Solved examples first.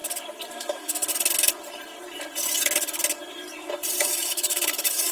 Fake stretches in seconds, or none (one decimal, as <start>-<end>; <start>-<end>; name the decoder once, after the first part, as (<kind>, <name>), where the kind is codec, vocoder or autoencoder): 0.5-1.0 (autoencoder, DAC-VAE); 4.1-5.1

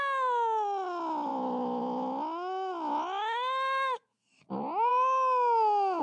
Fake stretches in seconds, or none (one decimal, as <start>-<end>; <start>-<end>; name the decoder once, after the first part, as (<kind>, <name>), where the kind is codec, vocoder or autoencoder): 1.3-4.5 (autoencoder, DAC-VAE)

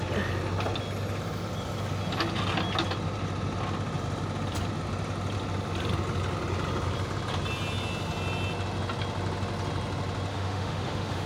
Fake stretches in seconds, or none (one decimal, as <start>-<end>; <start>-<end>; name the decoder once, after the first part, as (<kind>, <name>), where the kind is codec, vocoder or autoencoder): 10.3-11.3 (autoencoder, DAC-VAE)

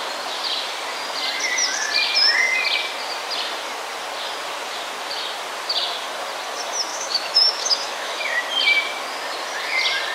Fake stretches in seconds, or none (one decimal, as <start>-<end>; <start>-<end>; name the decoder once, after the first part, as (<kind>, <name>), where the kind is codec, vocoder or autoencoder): 6.9-8.5 (autoencoder, DAC-VAE)